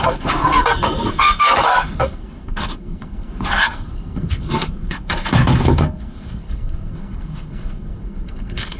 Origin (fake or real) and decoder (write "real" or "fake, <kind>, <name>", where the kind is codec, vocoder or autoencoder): fake, codec, SNAC